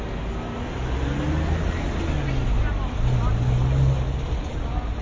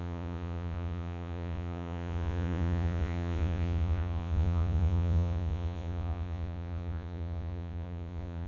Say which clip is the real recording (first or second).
first